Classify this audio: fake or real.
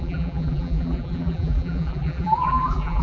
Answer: fake